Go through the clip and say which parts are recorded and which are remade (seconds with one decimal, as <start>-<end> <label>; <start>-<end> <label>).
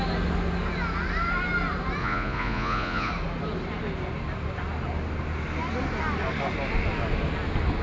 0.0-2.0 recorded; 2.0-3.1 remade; 3.1-7.8 recorded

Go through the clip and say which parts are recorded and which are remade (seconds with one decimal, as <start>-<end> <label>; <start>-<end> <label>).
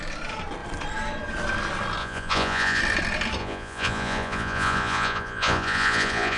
0.0-2.0 recorded; 2.0-2.8 remade; 2.8-3.4 recorded; 3.4-6.4 remade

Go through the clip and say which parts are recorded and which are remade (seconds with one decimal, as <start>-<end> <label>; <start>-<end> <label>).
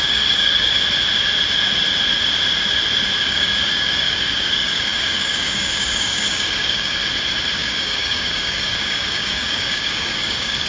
0.0-0.8 remade; 0.8-3.2 recorded; 3.2-7.0 remade; 7.0-7.6 recorded; 7.6-10.7 remade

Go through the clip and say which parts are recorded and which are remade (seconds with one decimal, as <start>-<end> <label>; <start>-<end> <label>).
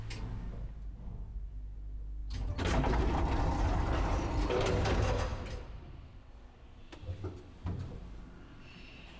0.0-9.2 recorded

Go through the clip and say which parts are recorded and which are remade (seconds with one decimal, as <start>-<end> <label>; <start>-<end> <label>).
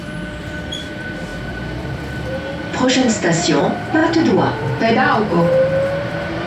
0.0-6.5 remade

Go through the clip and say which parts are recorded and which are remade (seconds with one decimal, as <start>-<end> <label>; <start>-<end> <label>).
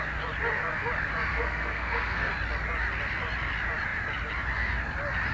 0.0-1.3 recorded; 1.3-2.3 remade; 2.3-5.3 recorded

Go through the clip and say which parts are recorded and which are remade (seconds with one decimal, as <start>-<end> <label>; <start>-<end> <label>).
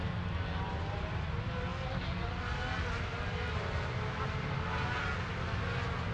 0.0-6.1 recorded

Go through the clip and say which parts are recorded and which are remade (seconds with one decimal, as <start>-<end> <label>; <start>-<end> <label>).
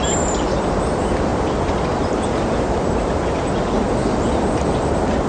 0.0-5.3 recorded